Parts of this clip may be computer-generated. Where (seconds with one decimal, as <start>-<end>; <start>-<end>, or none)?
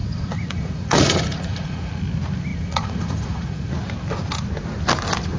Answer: 0.0-1.9; 2.5-3.7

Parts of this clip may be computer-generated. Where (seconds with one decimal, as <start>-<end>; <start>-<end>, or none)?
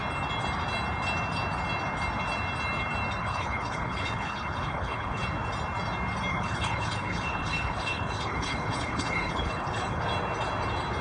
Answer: 3.2-5.2; 6.3-10.0